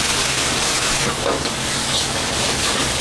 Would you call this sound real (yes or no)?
no